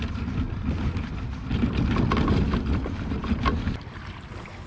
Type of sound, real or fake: real